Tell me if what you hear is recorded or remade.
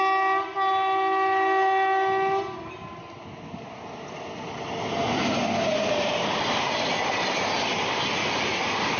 recorded